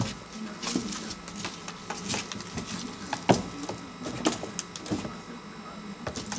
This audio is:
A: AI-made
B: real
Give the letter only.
B